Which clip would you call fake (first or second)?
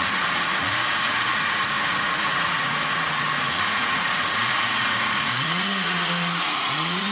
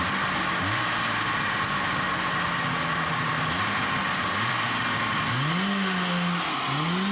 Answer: first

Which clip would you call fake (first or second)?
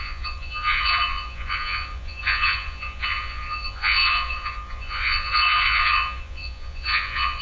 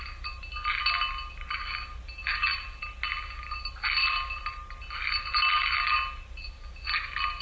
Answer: first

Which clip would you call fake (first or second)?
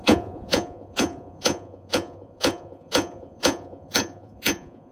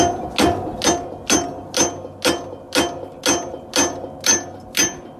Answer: first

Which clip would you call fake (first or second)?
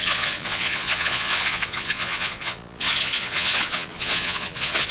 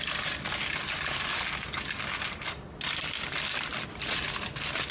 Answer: first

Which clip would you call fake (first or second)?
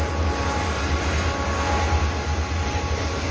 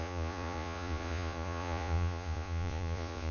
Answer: second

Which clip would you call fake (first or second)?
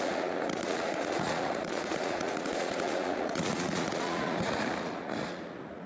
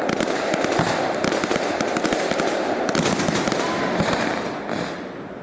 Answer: first